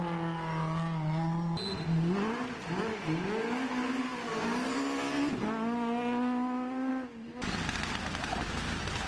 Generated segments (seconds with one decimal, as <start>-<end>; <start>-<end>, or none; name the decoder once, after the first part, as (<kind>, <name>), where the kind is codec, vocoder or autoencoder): none